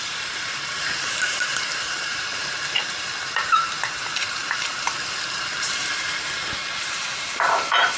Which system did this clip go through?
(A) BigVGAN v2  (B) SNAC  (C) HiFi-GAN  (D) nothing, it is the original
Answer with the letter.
A